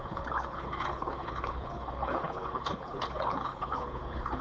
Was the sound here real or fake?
fake